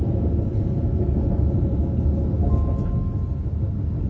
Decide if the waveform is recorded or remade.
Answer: recorded